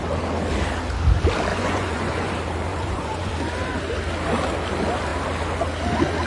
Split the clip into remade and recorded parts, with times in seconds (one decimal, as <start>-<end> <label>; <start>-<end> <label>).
0.0-1.5 recorded; 1.5-2.3 remade; 2.3-2.7 recorded; 2.7-3.3 remade; 3.3-6.3 recorded